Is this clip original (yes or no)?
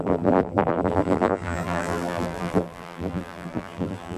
no